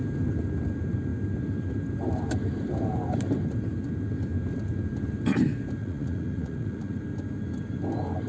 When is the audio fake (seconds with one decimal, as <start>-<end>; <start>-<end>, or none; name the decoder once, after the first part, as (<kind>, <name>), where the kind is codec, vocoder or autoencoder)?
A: 5.8-7.0 (vocoder, Vocos)